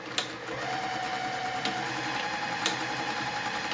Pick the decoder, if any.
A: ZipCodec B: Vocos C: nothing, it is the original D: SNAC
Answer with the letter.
C